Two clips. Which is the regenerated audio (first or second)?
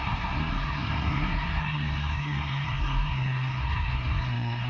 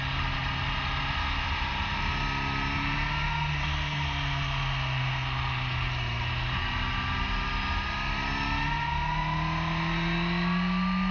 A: first